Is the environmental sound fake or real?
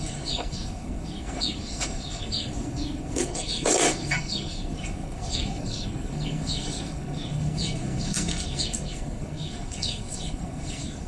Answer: fake